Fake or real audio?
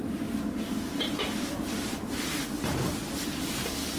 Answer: fake